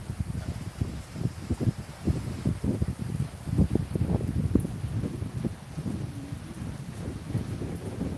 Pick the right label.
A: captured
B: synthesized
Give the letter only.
A